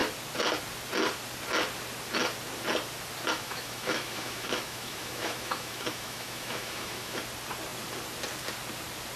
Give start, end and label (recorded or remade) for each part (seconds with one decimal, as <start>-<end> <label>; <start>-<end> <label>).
0.0-3.3 recorded; 3.3-7.2 remade; 7.2-9.2 recorded